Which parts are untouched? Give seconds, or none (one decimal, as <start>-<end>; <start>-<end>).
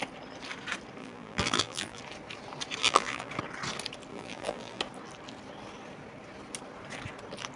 0.0-1.0; 2.0-2.8; 3.3-4.1; 4.8-7.6